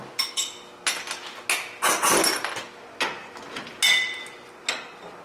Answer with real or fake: real